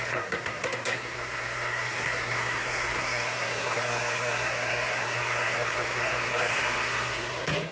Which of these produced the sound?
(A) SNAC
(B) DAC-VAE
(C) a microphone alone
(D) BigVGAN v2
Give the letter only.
A